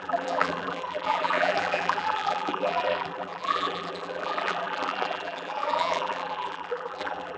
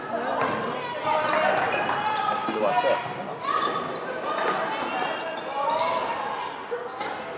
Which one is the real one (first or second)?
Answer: second